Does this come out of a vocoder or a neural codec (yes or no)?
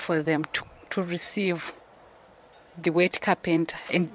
yes